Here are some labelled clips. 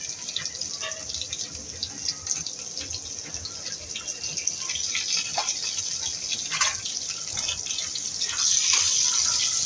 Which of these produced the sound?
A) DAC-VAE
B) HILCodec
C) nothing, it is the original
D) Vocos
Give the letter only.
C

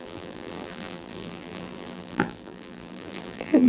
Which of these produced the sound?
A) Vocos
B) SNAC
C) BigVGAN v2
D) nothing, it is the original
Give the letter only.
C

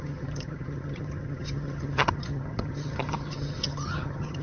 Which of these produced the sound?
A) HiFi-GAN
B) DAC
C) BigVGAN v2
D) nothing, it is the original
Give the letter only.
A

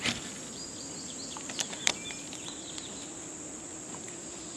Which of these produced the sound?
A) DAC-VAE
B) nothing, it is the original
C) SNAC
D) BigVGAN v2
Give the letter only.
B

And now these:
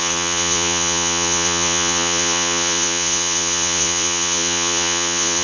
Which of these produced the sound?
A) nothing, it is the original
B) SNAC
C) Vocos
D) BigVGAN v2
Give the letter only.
C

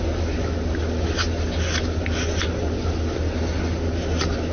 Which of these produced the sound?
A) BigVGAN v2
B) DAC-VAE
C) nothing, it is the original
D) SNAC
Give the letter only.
C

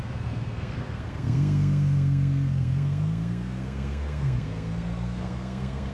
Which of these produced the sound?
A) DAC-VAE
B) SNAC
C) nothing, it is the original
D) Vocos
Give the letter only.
B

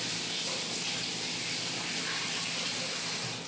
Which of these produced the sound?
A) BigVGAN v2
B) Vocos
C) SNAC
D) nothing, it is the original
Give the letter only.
D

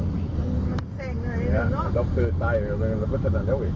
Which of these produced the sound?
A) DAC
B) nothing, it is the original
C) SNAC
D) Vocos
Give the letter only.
B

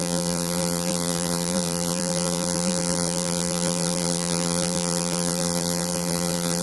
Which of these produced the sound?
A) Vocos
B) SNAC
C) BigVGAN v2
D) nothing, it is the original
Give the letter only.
C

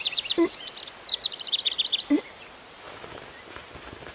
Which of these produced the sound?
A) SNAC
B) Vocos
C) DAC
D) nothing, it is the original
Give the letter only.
D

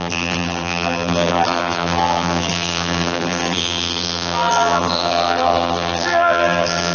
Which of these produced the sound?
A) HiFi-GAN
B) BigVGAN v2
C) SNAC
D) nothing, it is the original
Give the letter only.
B